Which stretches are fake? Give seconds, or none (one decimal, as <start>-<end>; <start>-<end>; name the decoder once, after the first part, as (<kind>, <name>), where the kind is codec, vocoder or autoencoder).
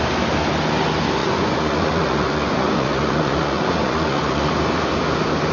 1.2-4.5 (vocoder, Vocos)